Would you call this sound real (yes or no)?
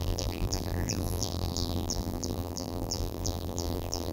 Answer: no